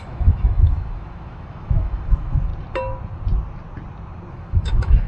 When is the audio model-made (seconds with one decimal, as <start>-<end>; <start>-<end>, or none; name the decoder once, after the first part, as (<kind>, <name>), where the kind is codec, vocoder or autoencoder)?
0.0-2.5 (autoencoder, DAC-VAE); 4.3-5.1